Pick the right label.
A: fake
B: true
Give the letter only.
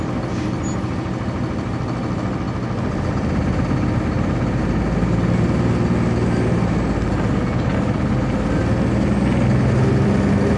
B